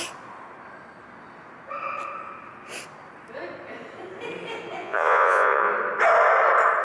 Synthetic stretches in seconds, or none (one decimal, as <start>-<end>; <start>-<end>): 4.8-5.7